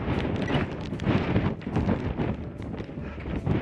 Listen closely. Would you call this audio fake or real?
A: real